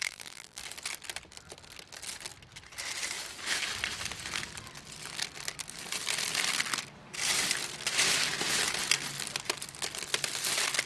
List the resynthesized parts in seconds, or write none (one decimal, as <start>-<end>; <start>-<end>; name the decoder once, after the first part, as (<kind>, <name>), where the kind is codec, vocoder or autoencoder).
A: 0.0-0.6 (vocoder, BigVGAN v2)